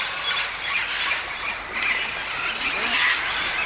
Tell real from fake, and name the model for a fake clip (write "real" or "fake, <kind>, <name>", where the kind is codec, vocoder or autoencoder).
real